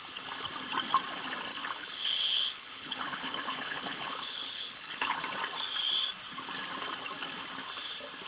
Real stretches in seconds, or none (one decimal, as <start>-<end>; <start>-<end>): 0.0-1.5; 5.2-8.3